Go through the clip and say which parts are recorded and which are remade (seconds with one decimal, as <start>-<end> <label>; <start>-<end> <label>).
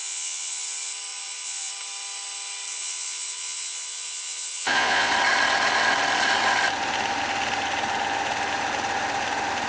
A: 0.0-0.6 remade; 0.6-1.1 recorded; 1.1-1.7 remade; 1.7-2.7 recorded; 2.7-5.1 remade; 5.1-9.7 recorded